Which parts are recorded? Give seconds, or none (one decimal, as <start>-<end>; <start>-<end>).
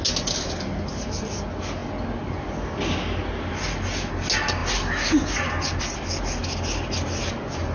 0.0-7.7